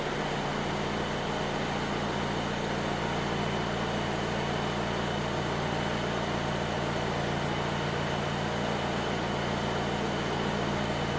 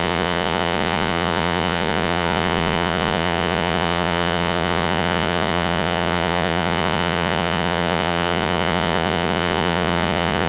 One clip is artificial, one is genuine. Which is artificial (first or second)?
second